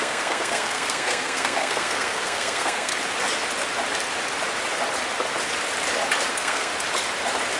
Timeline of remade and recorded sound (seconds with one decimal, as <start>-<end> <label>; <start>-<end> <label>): 0.0-2.9 remade; 2.9-6.3 recorded; 6.3-6.7 remade; 6.7-7.6 recorded